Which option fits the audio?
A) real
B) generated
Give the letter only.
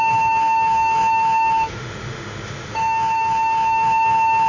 B